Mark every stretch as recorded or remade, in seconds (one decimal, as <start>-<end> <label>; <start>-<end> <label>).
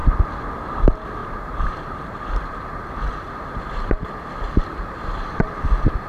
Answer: 0.0-0.5 remade; 0.5-1.2 recorded; 1.2-4.0 remade; 4.0-4.7 recorded; 4.7-5.3 remade; 5.3-6.1 recorded